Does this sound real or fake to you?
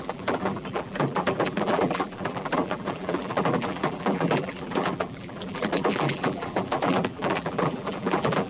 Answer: fake